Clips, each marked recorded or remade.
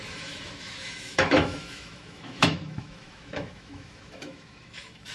remade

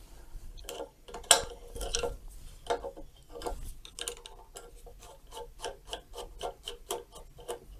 recorded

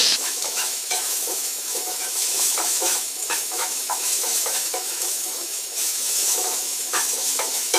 remade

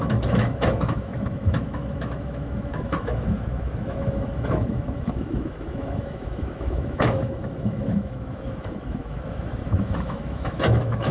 remade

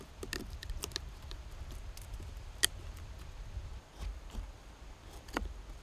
recorded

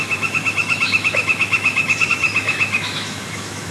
remade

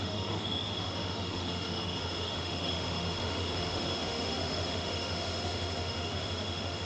remade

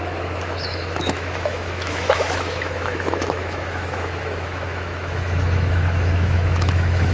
remade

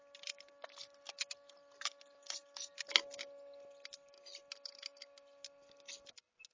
recorded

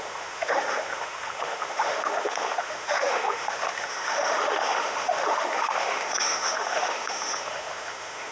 remade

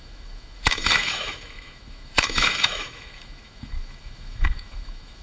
remade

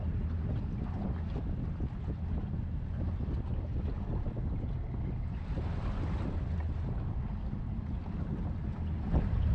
recorded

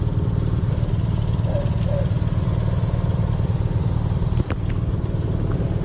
recorded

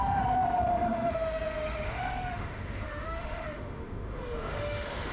remade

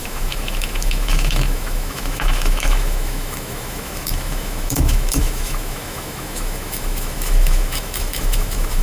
remade